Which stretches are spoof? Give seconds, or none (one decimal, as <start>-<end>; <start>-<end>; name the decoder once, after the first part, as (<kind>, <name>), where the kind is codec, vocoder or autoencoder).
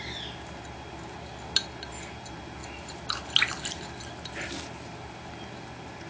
none